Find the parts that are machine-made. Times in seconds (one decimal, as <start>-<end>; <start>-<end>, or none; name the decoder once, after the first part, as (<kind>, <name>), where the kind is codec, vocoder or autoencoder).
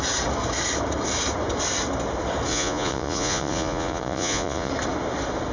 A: 2.5-4.7 (vocoder, Vocos)